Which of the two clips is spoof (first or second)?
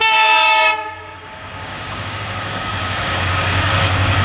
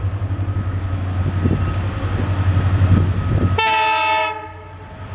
first